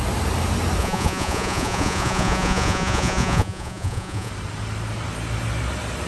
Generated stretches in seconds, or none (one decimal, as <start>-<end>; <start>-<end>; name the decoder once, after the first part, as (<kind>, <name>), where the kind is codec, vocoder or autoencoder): 0.8-4.3 (vocoder, Vocos)